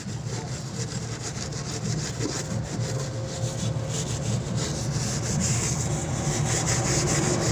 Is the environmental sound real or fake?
real